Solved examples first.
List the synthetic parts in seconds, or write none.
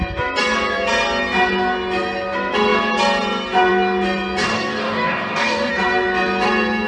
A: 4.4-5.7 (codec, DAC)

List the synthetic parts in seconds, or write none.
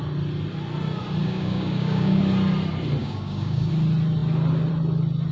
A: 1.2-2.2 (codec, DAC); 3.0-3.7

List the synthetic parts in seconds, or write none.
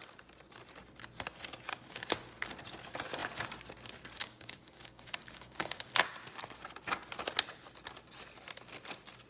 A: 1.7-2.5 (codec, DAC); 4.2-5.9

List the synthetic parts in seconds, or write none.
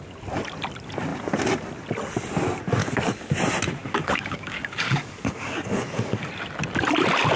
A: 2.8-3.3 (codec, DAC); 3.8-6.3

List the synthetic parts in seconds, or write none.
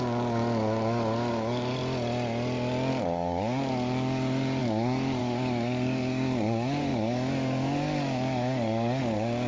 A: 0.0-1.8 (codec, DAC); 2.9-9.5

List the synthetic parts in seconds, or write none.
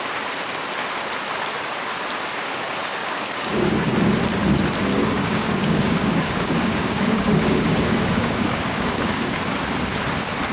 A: 3.0-3.9 (codec, DAC); 4.9-9.4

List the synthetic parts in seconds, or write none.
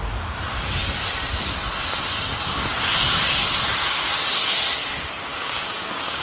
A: 5.3-6.2 (codec, DAC)